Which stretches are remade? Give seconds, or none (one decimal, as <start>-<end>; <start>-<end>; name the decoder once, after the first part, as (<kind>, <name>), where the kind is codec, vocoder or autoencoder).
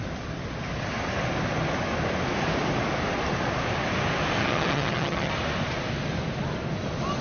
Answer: 4.4-5.3 (vocoder, HiFi-GAN)